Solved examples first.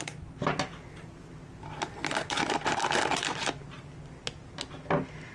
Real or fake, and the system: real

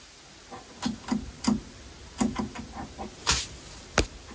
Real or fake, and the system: real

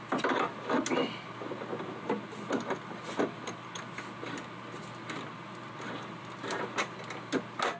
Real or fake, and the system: real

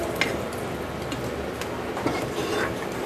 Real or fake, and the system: real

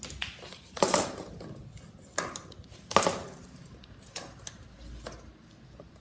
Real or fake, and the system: real